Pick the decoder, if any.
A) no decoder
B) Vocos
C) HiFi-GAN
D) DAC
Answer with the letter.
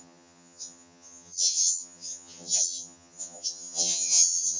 C